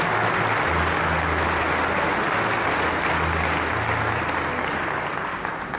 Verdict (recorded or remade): recorded